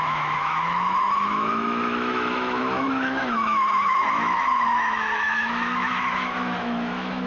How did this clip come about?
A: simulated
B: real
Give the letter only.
A